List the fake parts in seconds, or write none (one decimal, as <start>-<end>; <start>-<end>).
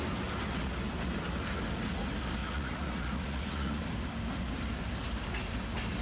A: 2.4-3.8